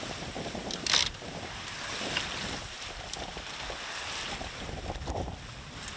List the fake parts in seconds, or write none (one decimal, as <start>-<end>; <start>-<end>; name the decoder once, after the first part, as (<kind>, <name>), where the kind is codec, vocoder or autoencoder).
0.6-4.2 (vocoder, BigVGAN v2)